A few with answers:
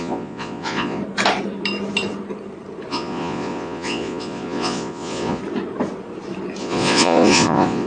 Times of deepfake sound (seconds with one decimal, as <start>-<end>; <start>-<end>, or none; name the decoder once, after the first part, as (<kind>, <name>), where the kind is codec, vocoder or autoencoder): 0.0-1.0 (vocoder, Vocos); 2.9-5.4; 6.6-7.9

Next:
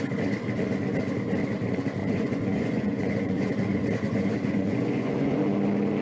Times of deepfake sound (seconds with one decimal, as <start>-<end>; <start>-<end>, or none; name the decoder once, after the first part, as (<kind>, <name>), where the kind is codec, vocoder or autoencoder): 2.0-5.4 (vocoder, Vocos)

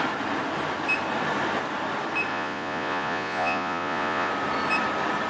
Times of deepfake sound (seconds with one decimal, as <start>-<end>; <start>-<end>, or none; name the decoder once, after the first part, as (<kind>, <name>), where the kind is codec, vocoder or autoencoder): 2.3-4.3 (vocoder, Vocos)

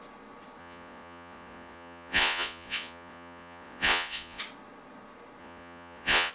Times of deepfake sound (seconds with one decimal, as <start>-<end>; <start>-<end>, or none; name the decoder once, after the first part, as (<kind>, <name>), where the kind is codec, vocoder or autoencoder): 0.6-4.4 (vocoder, Vocos); 5.4-6.3

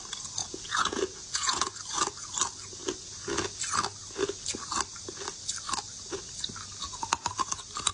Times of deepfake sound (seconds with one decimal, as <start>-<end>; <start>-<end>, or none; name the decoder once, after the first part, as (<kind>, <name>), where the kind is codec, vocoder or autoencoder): 0.4-1.8 (vocoder, Vocos)

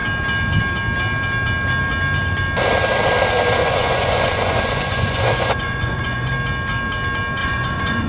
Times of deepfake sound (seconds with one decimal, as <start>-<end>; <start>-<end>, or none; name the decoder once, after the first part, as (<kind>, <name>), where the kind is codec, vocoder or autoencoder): 3.6-6.3 (vocoder, Vocos); 7.4-8.1

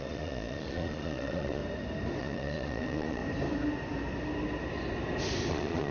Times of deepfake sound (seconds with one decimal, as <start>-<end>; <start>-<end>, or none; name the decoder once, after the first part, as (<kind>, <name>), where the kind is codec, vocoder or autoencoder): 0.0-1.6 (vocoder, Vocos); 2.2-3.2; 5.5-5.9